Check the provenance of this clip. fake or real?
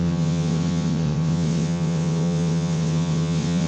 fake